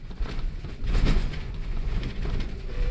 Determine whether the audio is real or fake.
fake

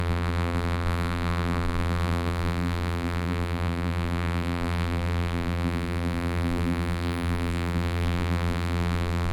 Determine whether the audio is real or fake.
fake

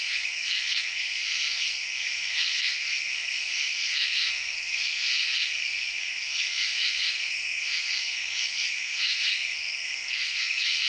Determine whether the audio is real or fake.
fake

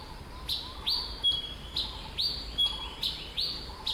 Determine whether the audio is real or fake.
real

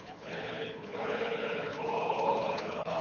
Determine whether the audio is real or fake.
fake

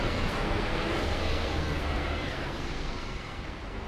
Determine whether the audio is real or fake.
fake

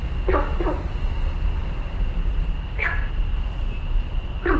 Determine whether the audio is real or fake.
real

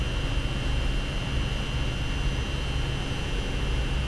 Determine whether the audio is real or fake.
real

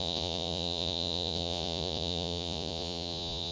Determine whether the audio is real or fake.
fake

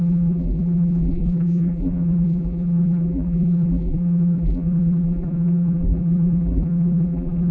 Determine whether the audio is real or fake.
fake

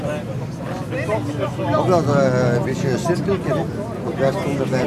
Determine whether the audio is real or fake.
real